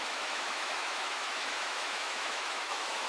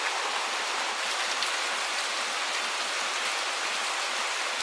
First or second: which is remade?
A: first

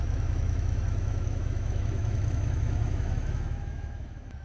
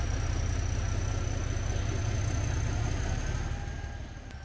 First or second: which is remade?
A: first